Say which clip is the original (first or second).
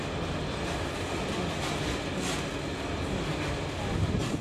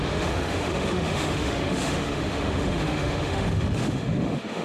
first